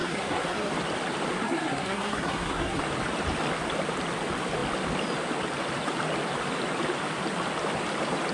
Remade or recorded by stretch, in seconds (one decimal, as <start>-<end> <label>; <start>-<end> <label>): 0.0-0.7 remade; 0.7-1.4 recorded; 1.4-2.8 remade; 2.8-8.3 recorded